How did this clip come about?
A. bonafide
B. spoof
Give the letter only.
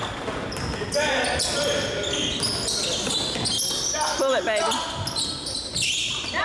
A